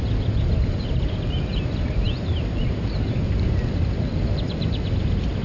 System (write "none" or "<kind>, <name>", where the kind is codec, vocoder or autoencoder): none